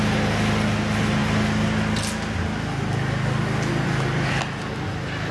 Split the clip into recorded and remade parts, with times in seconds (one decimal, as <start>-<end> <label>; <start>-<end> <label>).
0.0-5.3 recorded